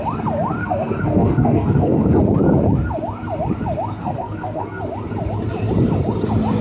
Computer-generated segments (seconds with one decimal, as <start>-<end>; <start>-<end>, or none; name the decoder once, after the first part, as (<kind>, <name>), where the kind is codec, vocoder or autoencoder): 0.6-2.2 (codec, SNAC); 4.0-4.8